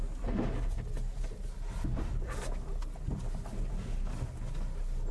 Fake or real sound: real